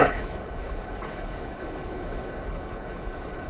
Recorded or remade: remade